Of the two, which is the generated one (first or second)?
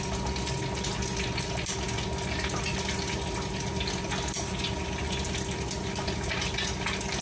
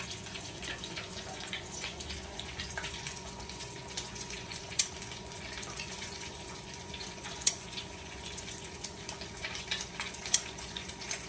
second